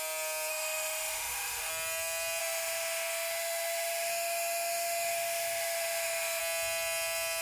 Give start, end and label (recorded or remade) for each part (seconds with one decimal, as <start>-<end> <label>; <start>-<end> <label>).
0.0-0.5 recorded; 0.5-1.7 remade; 1.7-2.4 recorded; 2.4-6.4 remade; 6.4-7.4 recorded